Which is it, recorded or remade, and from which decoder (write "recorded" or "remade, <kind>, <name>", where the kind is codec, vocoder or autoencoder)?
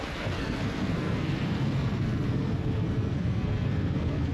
remade, codec, SNAC